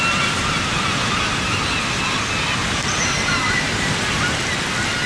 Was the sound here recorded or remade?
recorded